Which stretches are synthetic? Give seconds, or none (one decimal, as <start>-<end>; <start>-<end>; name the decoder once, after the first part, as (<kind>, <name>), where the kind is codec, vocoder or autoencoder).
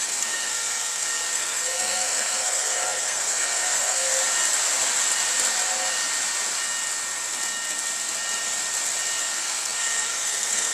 0.0-4.1 (codec, SNAC); 9.2-10.7